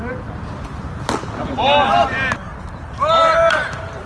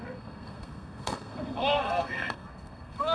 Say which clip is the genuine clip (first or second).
first